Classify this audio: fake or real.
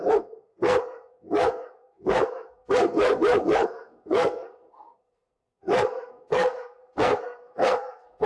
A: fake